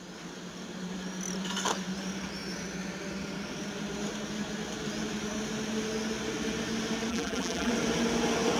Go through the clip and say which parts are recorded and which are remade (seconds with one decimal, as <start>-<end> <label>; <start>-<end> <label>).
0.0-7.1 recorded; 7.1-7.7 remade; 7.7-8.6 recorded